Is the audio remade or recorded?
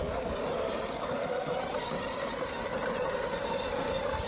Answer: recorded